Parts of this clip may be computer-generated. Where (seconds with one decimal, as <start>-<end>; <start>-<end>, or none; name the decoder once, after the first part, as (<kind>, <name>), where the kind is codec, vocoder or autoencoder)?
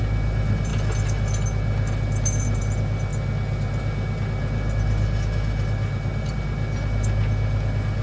none